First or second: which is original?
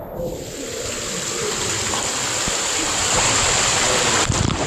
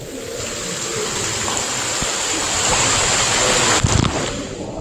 second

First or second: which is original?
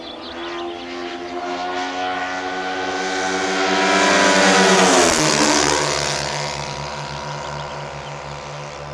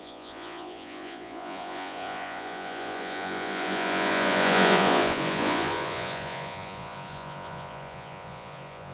first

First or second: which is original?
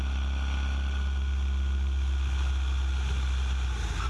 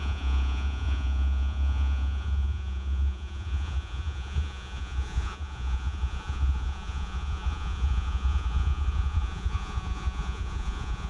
first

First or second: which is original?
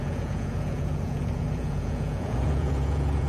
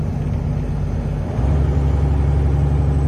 second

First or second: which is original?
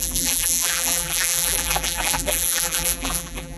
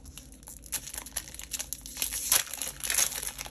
second